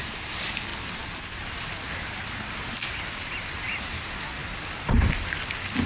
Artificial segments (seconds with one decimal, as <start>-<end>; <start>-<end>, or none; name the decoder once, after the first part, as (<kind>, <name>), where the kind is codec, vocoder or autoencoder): 0.7-1.7 (vocoder, BigVGAN v2); 4.4-5.0